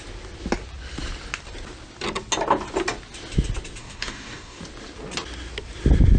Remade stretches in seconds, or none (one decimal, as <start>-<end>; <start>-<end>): 3.8-4.6